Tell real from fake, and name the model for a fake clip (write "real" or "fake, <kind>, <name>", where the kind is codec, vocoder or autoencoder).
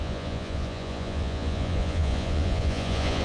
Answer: fake, vocoder, Vocos